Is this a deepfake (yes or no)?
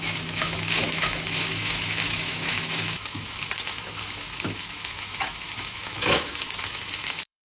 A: yes